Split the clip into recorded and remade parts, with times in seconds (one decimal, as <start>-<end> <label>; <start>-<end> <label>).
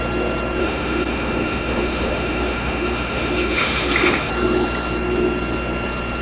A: 0.0-0.6 recorded; 0.6-4.3 remade; 4.3-6.2 recorded